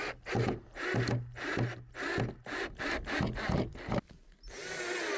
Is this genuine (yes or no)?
yes